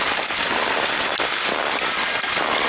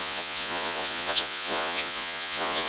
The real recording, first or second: first